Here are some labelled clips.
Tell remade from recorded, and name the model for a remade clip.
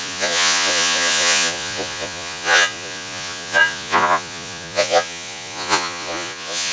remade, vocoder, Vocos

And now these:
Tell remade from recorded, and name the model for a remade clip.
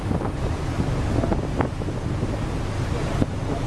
recorded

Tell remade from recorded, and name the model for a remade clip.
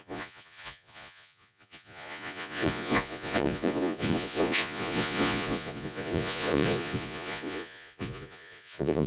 remade, vocoder, Vocos